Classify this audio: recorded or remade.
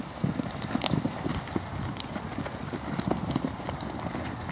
recorded